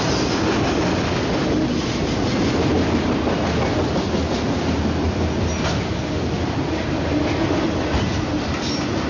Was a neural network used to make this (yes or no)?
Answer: no